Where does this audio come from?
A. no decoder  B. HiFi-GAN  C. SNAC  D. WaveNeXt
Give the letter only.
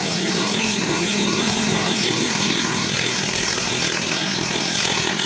C